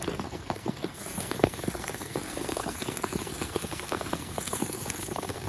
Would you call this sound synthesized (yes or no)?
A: yes